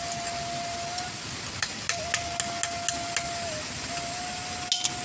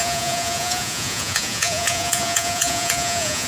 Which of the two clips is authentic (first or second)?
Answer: first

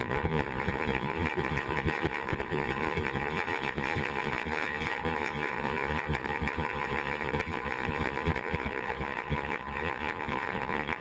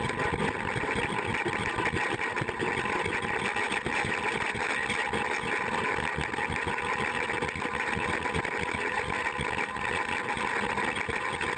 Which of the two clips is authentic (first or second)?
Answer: second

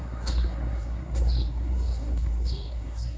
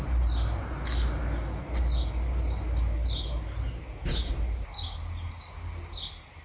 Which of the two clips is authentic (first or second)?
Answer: second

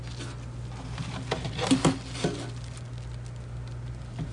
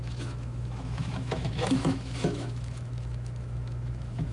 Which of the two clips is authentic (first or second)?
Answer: first